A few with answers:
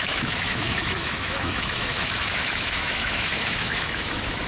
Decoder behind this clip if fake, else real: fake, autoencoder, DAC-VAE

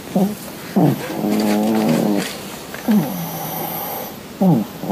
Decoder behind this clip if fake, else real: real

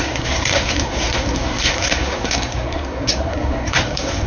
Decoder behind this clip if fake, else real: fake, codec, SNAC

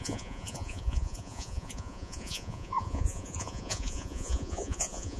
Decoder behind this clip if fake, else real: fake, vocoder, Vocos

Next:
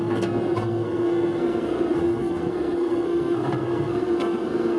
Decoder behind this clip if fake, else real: fake, codec, SNAC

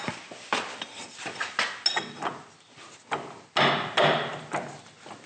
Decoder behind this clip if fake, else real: real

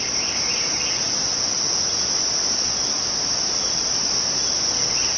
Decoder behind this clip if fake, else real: real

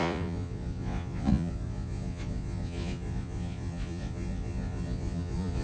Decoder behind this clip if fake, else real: fake, vocoder, Vocos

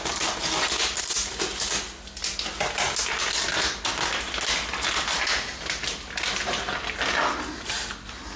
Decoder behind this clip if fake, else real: real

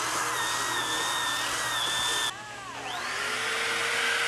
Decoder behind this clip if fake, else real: real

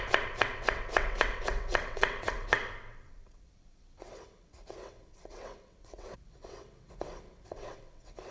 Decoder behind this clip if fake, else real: fake, vocoder, WaveNeXt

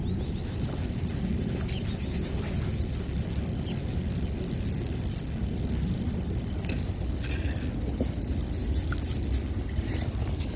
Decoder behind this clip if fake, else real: real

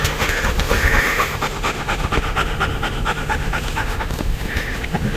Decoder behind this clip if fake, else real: fake, autoencoder, DAC-VAE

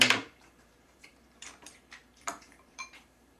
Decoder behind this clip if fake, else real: fake, vocoder, BigVGAN v2